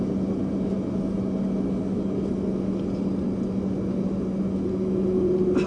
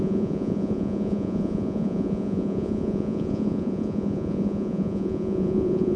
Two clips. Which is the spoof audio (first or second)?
second